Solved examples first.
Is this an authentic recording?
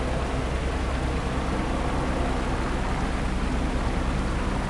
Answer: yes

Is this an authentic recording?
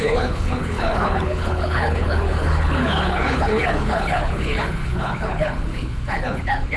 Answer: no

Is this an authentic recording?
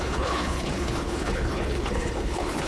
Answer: no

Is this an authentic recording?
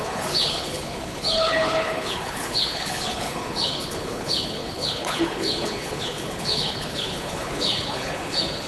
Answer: no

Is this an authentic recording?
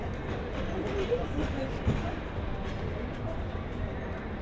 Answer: yes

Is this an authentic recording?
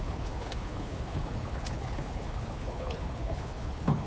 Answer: no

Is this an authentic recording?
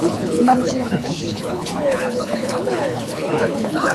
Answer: no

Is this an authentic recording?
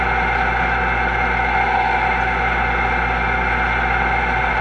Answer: yes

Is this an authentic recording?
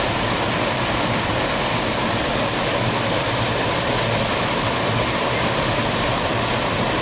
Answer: yes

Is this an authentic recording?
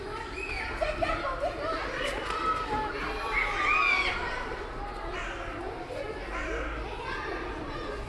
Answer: yes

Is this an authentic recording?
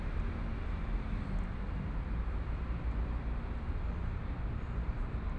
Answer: yes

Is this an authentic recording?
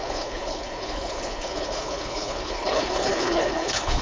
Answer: no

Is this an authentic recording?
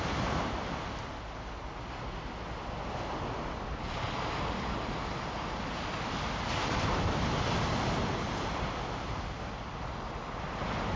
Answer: yes